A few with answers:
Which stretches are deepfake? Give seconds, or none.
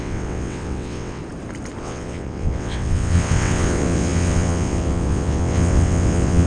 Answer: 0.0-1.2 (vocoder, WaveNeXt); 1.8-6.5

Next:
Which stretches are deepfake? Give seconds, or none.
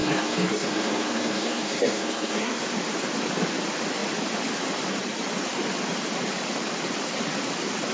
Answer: 0.0-2.6 (codec, SNAC)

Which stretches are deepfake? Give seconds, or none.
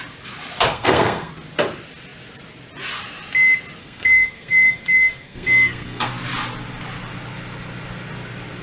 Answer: 0.7-1.3 (codec, SNAC); 3.8-6.1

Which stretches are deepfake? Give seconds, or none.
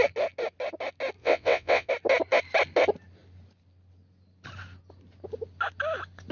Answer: 1.2-1.9 (vocoder, WaveNeXt)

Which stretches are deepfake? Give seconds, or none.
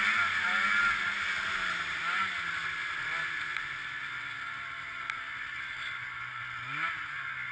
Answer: none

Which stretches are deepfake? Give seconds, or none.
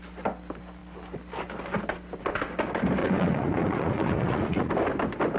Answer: 3.0-4.7 (vocoder, Vocos)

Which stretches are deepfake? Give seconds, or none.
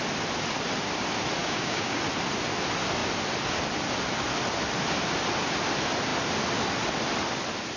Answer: 1.4-2.0 (codec, DAC)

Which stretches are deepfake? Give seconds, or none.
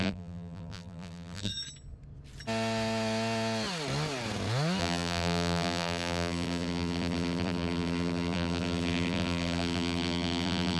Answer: 0.0-1.5 (vocoder, BigVGAN v2); 4.8-10.8